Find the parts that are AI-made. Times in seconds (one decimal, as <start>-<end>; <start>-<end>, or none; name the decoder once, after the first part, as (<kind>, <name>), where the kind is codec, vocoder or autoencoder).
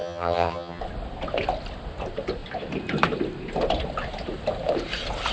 0.0-0.8 (vocoder, HiFi-GAN)